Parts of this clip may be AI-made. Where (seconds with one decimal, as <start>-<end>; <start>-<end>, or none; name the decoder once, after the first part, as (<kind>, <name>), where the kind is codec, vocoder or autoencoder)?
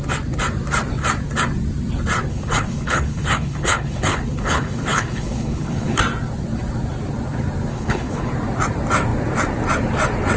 2.3-6.0 (codec, HILCodec); 7.7-8.3